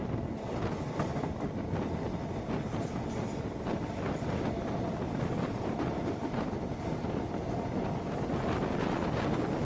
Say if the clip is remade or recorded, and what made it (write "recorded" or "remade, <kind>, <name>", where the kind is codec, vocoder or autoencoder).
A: recorded